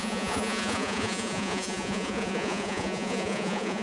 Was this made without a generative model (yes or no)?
no